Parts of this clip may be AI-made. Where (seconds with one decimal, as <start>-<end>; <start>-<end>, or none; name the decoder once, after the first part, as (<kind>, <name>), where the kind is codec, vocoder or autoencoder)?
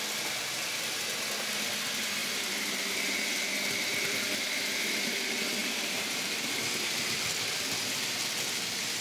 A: 2.2-3.5 (vocoder, BigVGAN v2); 5.6-7.2